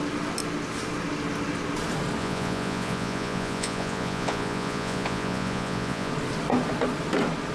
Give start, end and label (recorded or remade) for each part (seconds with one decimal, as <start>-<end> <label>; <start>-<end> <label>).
0.0-2.2 recorded; 2.2-6.1 remade; 6.1-7.5 recorded